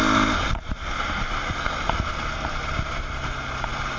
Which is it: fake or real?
real